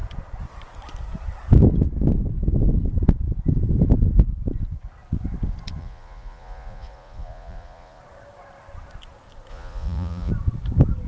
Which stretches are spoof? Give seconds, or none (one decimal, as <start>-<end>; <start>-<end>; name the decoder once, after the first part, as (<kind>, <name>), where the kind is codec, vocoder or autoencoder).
5.8-8.0 (vocoder, Vocos); 9.5-10.3